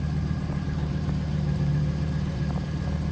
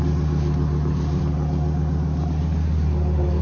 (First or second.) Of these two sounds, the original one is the second